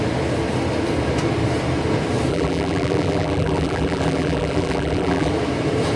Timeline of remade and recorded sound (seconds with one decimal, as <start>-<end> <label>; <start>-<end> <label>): 0.0-2.3 recorded; 2.3-5.3 remade; 5.3-6.0 recorded